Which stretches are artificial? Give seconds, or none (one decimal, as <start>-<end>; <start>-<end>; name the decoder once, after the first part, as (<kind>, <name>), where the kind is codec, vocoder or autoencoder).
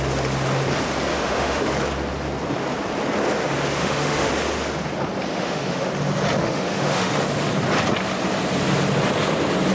1.1-1.7 (autoencoder, DAC-VAE); 3.8-4.3; 5.3-5.9; 6.4-7.2